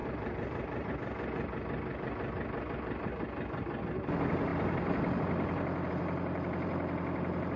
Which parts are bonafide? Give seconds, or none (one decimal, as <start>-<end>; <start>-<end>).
0.9-7.6